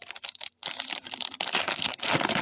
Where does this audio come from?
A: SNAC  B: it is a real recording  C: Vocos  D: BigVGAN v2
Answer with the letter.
B